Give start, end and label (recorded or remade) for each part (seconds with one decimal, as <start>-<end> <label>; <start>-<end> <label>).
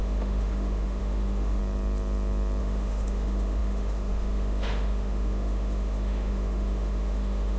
0.0-1.6 remade; 1.6-2.6 recorded; 2.6-7.6 remade